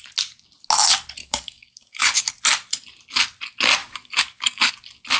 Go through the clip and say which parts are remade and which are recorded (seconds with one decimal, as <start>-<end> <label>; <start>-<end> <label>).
0.0-1.2 recorded; 1.2-2.3 remade; 2.3-3.8 recorded; 3.8-4.7 remade; 4.7-5.2 recorded